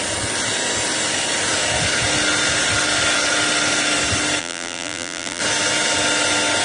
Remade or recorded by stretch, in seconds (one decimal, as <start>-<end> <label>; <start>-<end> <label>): 0.0-4.4 recorded; 4.4-5.4 remade; 5.4-6.6 recorded